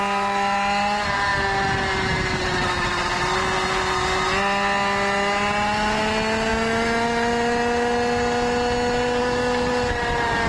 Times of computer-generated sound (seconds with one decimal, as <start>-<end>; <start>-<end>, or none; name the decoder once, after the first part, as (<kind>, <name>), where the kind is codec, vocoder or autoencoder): none